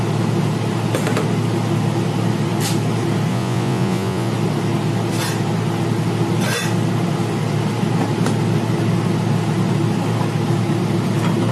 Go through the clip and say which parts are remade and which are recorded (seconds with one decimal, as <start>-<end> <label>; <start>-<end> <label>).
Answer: 0.0-3.3 recorded; 3.3-4.3 remade; 4.3-11.5 recorded